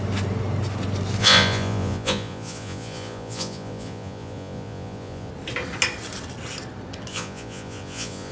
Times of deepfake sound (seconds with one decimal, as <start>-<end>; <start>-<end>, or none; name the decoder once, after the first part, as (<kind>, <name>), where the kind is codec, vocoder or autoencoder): 1.2-5.3 (vocoder, Vocos); 7.1-8.3